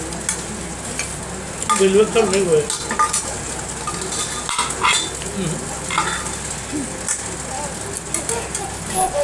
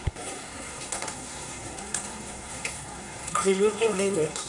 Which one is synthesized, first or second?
second